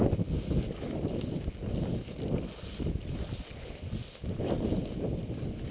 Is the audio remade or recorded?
recorded